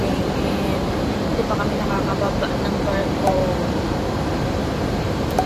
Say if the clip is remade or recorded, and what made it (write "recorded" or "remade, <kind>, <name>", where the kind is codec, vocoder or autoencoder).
remade, vocoder, BigVGAN v2